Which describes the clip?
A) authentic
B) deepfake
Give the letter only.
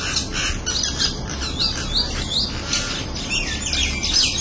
A